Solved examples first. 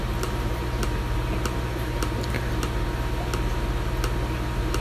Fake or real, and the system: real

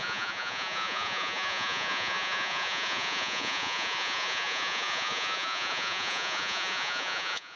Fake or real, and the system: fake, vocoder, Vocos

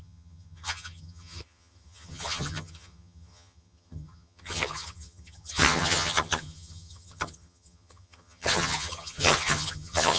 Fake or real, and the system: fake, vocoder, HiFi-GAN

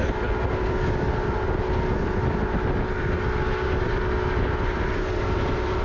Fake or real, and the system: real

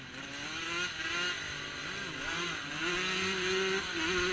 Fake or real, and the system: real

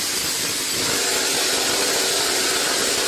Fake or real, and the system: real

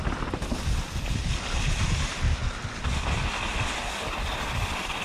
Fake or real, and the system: real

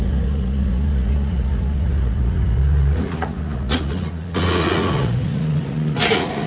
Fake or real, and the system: fake, vocoder, Vocos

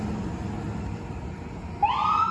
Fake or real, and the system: real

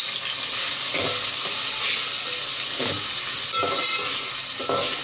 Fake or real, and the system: real